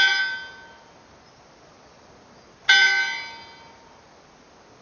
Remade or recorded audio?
recorded